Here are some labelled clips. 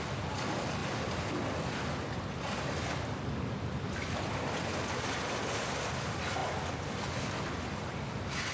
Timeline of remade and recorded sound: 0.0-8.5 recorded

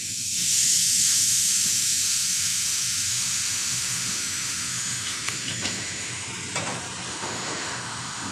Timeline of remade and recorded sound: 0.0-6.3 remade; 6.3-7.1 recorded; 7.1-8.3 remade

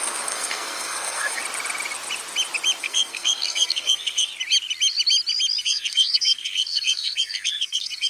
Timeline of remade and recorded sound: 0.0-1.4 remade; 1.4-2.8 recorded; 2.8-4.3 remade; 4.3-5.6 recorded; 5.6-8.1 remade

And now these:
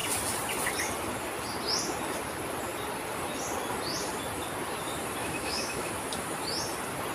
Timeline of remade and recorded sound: 0.0-5.2 recorded; 5.2-5.9 remade; 5.9-7.1 recorded

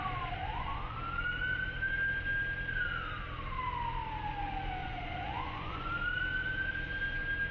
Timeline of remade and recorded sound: 0.0-0.4 recorded; 0.4-1.0 remade; 1.0-4.8 recorded; 4.8-5.9 remade; 5.9-7.5 recorded